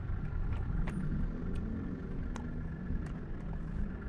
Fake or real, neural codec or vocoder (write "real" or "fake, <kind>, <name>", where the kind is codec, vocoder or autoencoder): fake, vocoder, BigVGAN v2